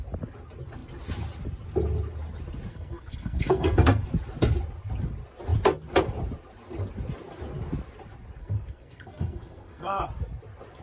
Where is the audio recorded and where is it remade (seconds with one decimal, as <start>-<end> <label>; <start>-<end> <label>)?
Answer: 0.0-2.7 recorded; 2.7-4.1 remade; 4.1-8.4 recorded; 8.4-10.0 remade; 10.0-10.8 recorded